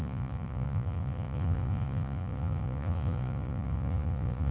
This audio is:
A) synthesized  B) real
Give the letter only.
A